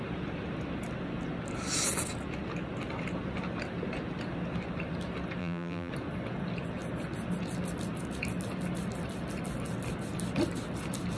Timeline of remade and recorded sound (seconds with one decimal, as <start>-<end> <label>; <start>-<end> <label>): 0.0-5.4 recorded; 5.4-5.9 remade; 5.9-11.2 recorded